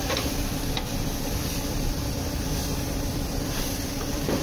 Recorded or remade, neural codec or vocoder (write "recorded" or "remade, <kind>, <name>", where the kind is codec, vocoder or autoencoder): remade, vocoder, BigVGAN v2